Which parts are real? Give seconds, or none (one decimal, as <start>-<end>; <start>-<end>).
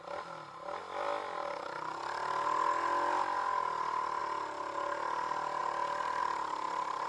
0.0-7.1